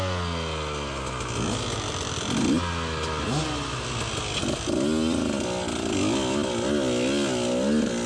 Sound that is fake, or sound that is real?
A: real